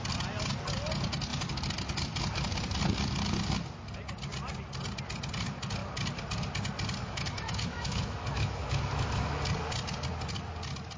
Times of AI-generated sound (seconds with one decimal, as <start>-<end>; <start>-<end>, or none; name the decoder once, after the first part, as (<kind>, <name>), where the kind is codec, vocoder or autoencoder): 7.0-9.4 (autoencoder, DAC-VAE)